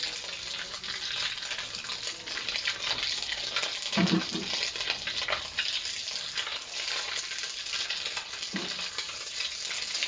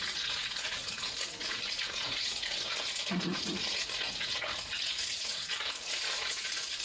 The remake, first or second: second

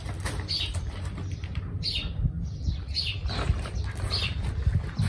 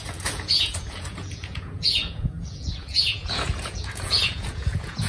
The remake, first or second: second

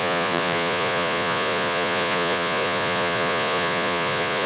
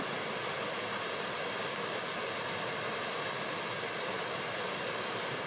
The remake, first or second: first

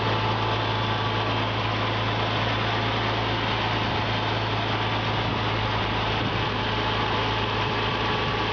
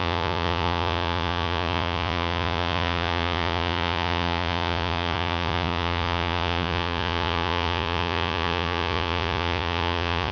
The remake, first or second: second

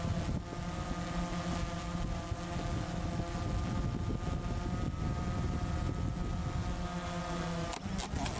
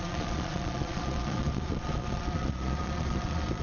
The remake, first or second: second